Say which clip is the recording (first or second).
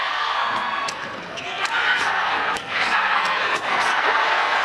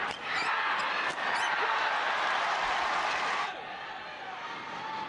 second